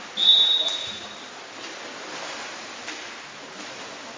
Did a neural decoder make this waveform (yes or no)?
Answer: no